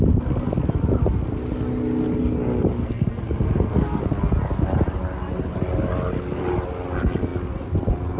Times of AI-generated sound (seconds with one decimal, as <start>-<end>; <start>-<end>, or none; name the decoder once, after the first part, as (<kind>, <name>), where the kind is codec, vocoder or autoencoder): 2.8-4.0 (codec, SNAC)